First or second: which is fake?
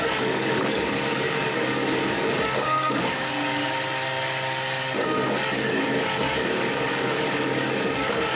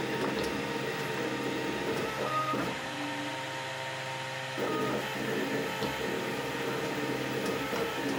first